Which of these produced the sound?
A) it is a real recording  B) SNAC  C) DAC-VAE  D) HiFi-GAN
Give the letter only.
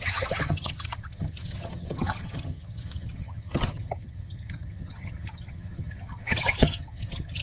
D